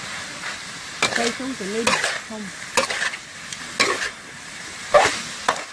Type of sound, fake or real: real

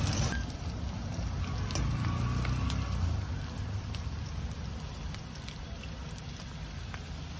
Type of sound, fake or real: real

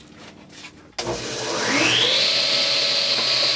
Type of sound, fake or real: real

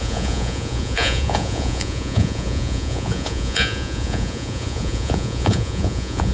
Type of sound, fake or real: fake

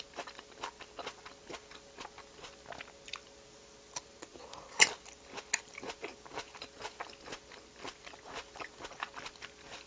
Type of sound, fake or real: real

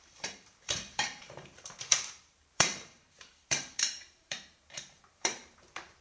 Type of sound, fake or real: fake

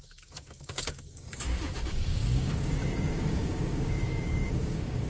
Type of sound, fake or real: fake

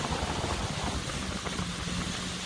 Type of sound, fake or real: real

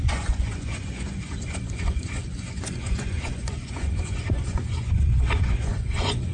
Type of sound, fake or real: fake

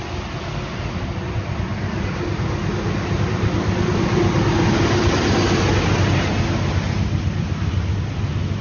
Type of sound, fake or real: real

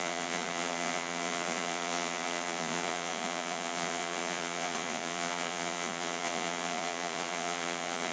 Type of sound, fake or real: fake